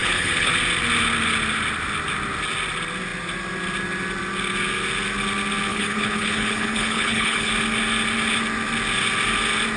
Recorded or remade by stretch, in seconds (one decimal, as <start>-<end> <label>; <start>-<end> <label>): 0.0-0.5 remade; 0.5-5.7 recorded; 5.7-7.5 remade; 7.5-9.8 recorded